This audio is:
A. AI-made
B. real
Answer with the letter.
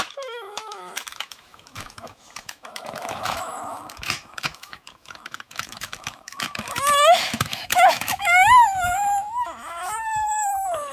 A